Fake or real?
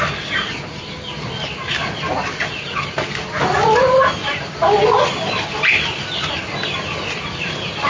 real